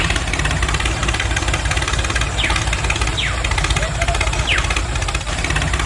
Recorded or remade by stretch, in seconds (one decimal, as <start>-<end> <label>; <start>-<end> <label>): 0.0-5.9 recorded